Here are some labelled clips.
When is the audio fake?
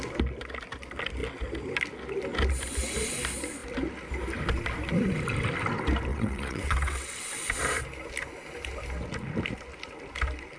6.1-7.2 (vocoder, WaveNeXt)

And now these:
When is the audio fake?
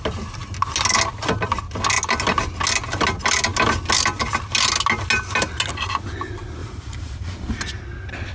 6.6-7.5 (vocoder, BigVGAN v2)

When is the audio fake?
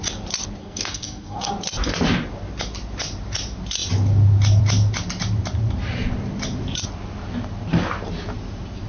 0.6-1.5 (codec, SNAC)